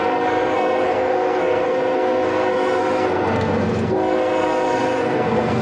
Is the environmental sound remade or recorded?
remade